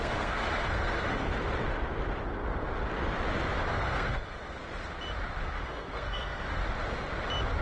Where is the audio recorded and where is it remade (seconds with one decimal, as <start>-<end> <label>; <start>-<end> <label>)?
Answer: 0.0-1.3 remade; 1.3-3.7 recorded; 3.7-4.6 remade; 4.6-5.4 recorded; 5.4-6.6 remade; 6.6-7.6 recorded